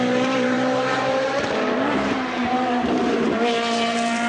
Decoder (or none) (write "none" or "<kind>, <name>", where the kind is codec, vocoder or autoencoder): vocoder, BigVGAN v2